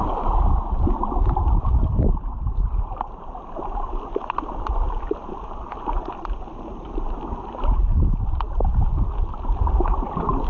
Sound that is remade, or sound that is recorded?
recorded